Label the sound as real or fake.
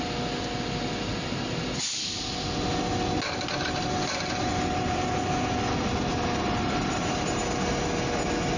real